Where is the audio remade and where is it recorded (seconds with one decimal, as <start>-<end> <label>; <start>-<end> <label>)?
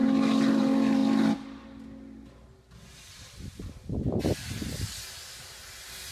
0.0-6.1 recorded